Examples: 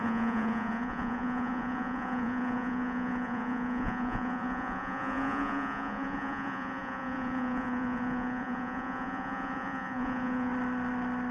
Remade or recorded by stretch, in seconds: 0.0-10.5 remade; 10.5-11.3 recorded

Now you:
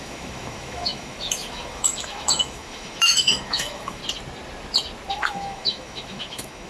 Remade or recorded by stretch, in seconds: 0.0-4.0 remade; 4.0-5.1 recorded; 5.1-6.7 remade

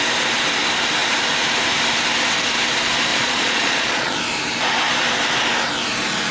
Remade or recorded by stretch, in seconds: 0.0-3.1 recorded; 3.1-4.2 remade; 4.2-6.3 recorded

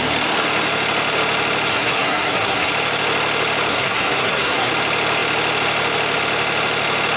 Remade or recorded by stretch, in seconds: 0.0-1.7 recorded; 1.7-2.7 remade; 2.7-3.7 recorded; 3.7-4.7 remade; 4.7-7.2 recorded

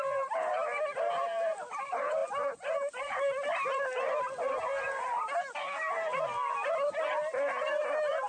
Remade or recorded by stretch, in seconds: 0.0-8.3 recorded